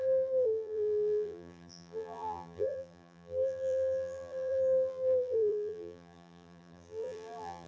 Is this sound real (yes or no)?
no